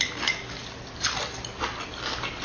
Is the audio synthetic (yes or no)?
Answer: no